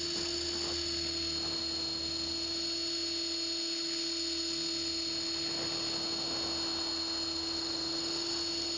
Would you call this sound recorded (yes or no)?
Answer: yes